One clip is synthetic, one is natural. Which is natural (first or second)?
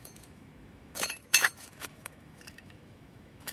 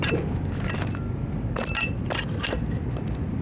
second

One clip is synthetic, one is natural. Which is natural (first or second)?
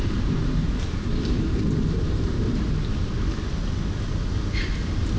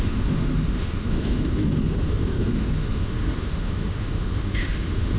first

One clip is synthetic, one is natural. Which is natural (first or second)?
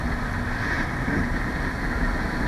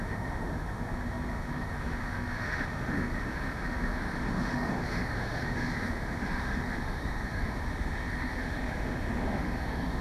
first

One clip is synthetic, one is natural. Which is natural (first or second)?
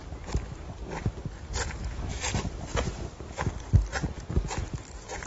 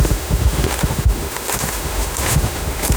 first